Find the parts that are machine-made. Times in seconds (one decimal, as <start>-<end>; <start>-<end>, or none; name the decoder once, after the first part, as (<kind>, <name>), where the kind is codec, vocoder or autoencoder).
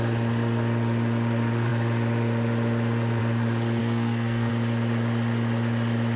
3.8-4.5 (codec, SNAC)